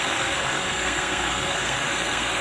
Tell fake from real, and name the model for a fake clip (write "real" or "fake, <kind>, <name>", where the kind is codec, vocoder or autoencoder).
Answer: fake, codec, SNAC